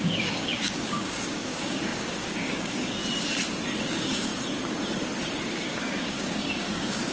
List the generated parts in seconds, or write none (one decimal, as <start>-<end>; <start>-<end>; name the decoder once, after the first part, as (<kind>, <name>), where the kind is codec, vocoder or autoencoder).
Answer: 0.0-3.0 (codec, DAC); 3.8-4.3; 5.4-7.1